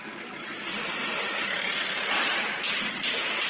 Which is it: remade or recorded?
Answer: remade